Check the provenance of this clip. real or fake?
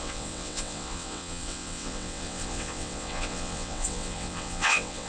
fake